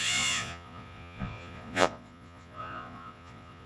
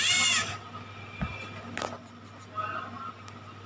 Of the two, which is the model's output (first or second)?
first